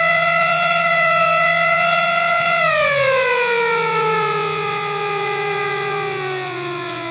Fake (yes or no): yes